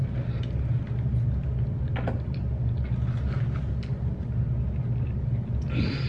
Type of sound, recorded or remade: recorded